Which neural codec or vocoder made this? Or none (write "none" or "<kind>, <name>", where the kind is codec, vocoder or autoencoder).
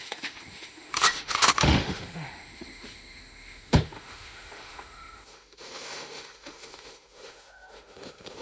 autoencoder, DAC-VAE